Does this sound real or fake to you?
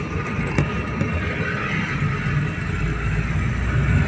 real